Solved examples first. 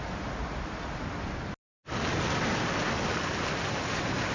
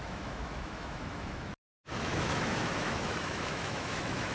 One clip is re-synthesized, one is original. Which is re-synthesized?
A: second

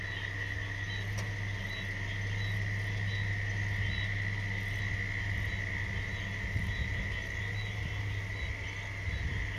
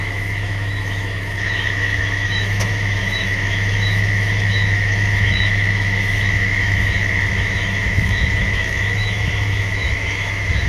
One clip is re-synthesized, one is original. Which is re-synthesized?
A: second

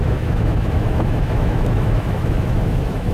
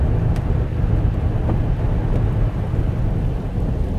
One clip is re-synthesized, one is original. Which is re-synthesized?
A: first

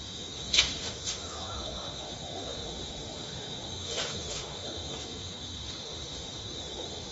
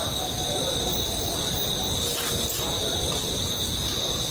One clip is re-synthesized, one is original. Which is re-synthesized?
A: first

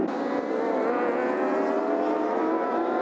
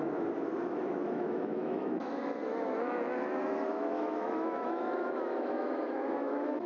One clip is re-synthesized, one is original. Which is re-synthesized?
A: second